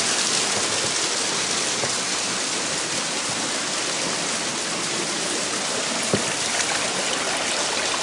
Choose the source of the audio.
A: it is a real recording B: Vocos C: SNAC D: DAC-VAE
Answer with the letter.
A